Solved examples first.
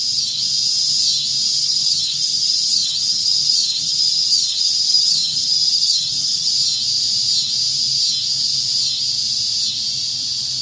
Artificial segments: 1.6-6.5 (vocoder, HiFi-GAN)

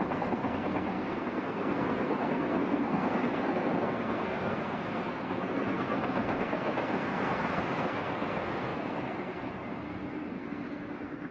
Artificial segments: 0.0-11.3 (codec, SNAC)

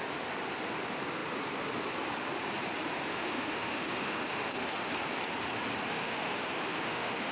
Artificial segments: 3.1-4.9 (autoencoder, DAC-VAE); 5.9-7.3

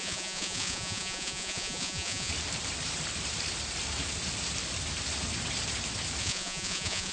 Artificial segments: 0.0-2.3 (vocoder, Vocos); 6.2-7.1

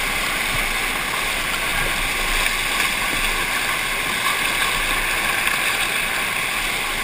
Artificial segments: none